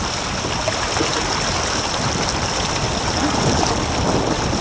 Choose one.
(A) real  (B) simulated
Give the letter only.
A